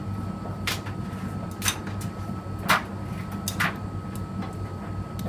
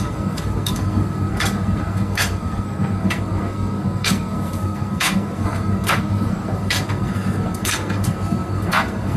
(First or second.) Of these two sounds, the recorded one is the first